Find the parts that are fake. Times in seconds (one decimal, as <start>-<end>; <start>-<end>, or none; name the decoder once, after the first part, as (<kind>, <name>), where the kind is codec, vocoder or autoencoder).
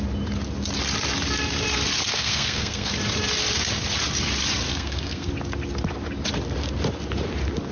2.1-2.9 (codec, SNAC); 4.7-5.3